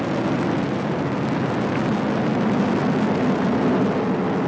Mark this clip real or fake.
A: real